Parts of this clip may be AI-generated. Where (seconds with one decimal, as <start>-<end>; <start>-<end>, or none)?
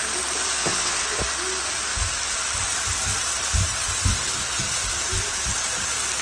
0.6-1.2